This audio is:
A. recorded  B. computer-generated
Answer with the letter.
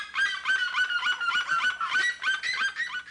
A